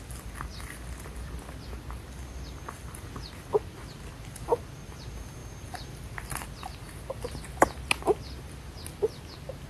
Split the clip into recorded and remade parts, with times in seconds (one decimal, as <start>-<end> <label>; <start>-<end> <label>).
0.0-9.7 recorded

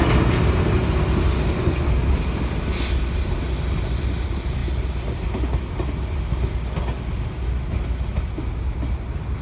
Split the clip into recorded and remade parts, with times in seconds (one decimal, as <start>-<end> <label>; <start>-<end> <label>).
0.0-9.4 recorded

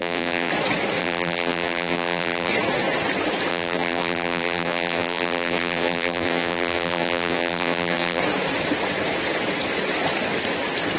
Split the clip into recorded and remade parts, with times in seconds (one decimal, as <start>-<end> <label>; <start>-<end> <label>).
0.0-0.5 remade; 0.5-1.0 recorded; 1.0-2.5 remade; 2.5-3.5 recorded; 3.5-8.2 remade; 8.2-11.0 recorded

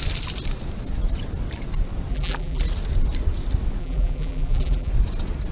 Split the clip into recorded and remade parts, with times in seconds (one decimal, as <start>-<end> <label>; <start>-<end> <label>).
0.0-2.1 recorded; 2.1-2.6 remade; 2.6-3.8 recorded; 3.8-4.9 remade; 4.9-5.5 recorded

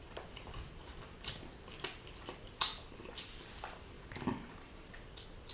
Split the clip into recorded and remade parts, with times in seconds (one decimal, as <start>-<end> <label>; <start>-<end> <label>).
0.0-5.5 recorded